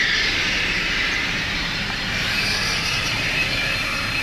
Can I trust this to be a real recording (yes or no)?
no